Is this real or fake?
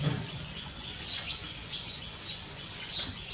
fake